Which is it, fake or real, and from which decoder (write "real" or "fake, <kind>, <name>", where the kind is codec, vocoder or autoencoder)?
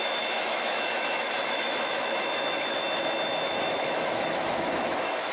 fake, autoencoder, DAC-VAE